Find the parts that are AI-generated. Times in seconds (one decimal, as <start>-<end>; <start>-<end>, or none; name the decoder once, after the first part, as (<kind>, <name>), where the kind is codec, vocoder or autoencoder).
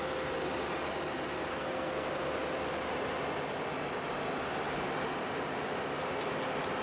1.5-2.1 (codec, SNAC)